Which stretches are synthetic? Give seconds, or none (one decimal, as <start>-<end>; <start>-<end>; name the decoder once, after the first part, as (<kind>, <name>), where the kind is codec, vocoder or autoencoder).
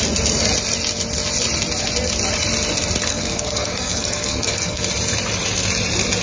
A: 3.1-4.8 (codec, SNAC)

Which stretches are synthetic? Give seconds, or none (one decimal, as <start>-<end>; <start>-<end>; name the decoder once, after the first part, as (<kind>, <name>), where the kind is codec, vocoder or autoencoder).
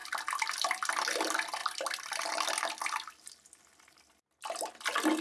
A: none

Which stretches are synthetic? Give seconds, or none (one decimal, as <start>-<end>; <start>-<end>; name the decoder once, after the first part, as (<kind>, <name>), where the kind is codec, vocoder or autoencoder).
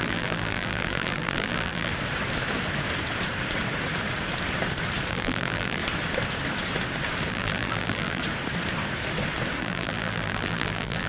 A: 0.0-1.9 (vocoder, BigVGAN v2); 5.1-5.8; 7.3-8.2; 9.6-11.1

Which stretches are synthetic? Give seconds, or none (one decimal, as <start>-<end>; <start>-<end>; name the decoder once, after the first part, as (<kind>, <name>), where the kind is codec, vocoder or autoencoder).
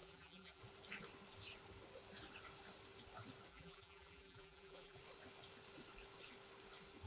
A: 0.0-0.6 (vocoder, BigVGAN v2); 3.5-5.0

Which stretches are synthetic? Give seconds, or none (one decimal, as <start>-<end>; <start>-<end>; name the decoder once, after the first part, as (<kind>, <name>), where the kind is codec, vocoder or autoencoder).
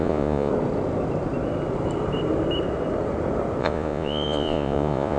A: 0.0-0.5 (vocoder, Vocos); 3.6-5.2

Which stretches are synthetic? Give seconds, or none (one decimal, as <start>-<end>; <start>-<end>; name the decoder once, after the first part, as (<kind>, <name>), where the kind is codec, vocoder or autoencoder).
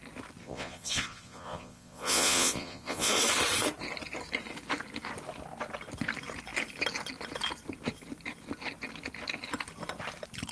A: 0.4-3.1 (vocoder, Vocos)